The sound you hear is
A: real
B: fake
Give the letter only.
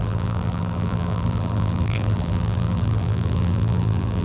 B